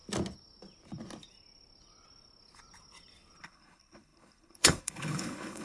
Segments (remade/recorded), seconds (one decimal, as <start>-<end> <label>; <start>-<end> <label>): 0.0-3.4 recorded; 3.4-5.6 remade